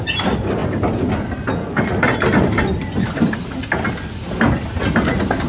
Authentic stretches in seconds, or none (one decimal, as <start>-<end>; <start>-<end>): 0.0-5.5